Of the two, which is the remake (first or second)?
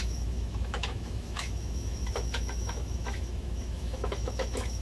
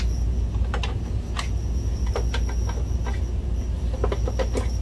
first